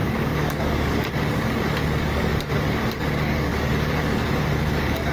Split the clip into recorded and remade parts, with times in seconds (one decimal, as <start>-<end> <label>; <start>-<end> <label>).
0.0-2.3 remade; 2.3-2.9 recorded; 2.9-5.1 remade